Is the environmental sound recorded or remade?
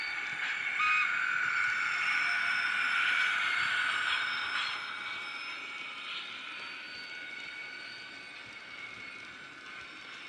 recorded